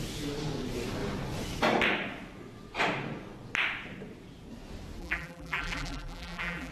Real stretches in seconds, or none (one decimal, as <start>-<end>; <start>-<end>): 0.0-5.0